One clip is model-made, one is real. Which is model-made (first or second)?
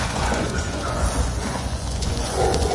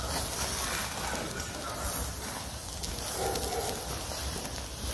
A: first